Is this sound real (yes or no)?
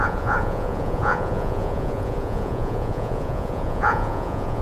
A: no